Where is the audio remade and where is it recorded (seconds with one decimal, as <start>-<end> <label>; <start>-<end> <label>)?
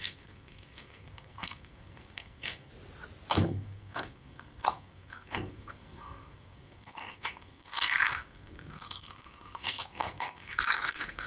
0.0-2.7 remade; 2.7-3.3 recorded; 3.3-11.3 remade